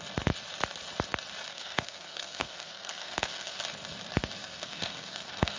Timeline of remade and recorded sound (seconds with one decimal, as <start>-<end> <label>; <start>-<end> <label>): 0.0-1.5 recorded; 1.5-3.6 remade; 3.6-4.4 recorded; 4.4-5.6 remade